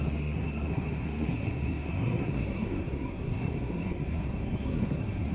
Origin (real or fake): fake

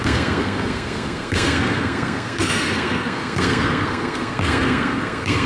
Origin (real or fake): fake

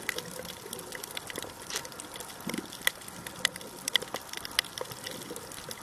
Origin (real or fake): real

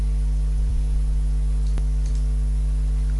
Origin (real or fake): fake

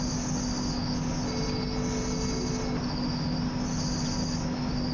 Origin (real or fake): real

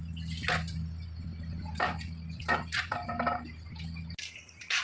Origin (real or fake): real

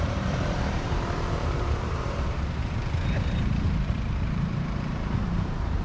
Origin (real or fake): fake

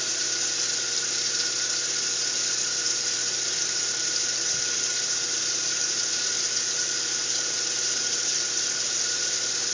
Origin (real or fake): fake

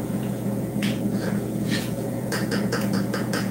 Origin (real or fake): fake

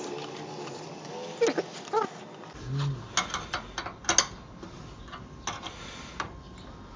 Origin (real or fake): real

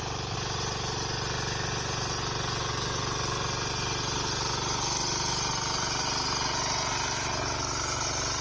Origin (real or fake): real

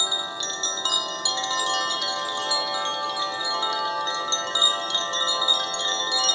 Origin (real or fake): real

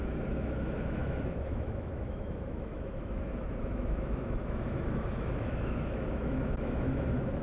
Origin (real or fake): fake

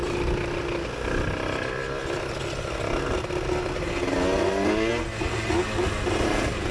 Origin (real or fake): real